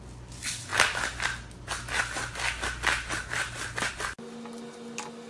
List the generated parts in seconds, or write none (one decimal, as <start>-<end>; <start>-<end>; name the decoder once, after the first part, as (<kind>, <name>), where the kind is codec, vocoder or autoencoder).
none